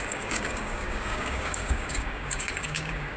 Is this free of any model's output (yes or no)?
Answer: no